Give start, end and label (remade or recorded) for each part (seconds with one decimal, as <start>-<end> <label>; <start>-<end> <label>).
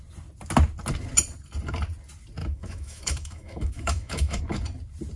0.0-2.4 recorded; 2.4-4.4 remade; 4.4-5.2 recorded